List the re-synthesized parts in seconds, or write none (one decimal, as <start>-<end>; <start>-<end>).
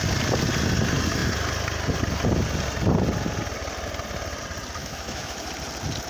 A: 4.8-5.5